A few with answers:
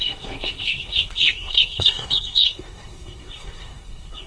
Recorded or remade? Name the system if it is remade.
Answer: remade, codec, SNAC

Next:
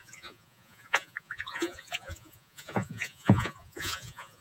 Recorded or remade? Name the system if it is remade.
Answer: remade, vocoder, Vocos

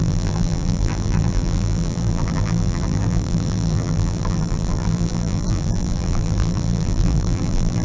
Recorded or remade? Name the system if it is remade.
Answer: remade, vocoder, BigVGAN v2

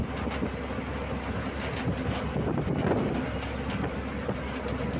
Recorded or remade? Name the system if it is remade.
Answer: recorded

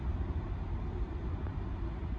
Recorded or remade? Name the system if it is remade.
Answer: recorded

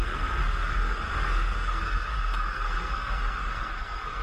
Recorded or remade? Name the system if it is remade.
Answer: remade, codec, SNAC